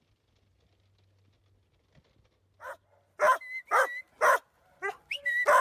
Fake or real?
real